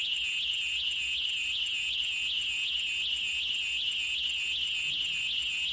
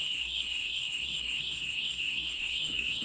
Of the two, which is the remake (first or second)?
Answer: second